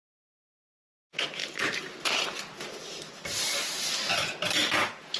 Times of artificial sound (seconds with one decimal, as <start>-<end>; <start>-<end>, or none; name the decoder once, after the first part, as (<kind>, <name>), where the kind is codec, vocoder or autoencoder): 4.6-5.2 (vocoder, Vocos)